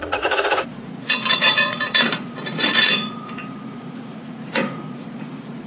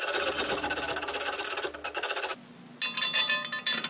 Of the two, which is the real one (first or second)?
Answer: second